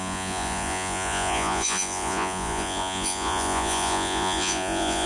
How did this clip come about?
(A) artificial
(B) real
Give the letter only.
A